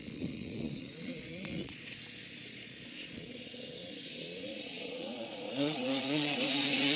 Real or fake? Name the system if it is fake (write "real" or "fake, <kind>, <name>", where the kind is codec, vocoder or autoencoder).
fake, vocoder, Vocos